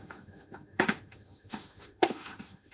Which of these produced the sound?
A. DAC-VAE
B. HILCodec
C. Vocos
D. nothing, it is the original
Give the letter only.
A